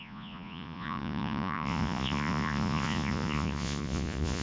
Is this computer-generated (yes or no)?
yes